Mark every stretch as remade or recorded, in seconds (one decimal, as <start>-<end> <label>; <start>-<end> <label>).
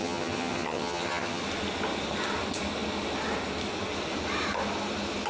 0.0-1.4 remade; 1.4-5.3 recorded